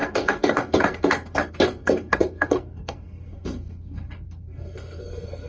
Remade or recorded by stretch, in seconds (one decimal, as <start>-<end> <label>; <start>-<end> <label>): 0.0-5.5 remade